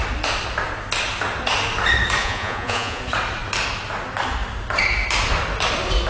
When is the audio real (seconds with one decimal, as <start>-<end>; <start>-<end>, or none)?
0.0-2.2; 3.0-6.1